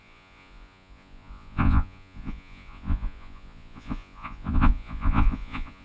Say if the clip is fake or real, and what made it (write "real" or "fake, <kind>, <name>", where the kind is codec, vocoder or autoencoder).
fake, vocoder, Vocos